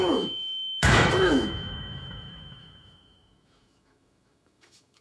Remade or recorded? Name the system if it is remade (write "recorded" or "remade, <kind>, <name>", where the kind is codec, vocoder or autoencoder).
remade, autoencoder, DAC-VAE